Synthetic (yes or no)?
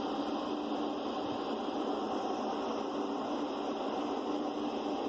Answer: no